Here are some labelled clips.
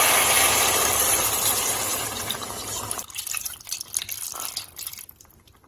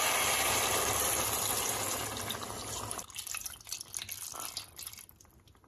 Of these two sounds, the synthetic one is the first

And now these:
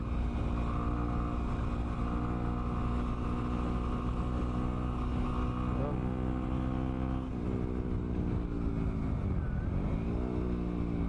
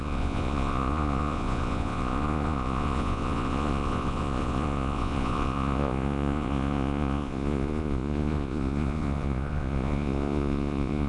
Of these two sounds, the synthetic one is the second